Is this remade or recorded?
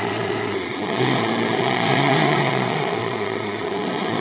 remade